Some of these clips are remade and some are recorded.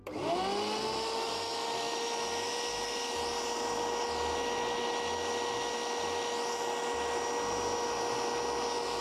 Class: recorded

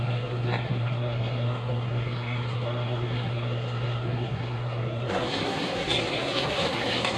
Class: remade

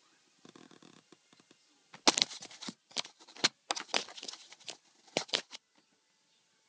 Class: recorded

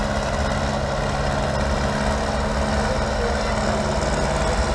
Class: recorded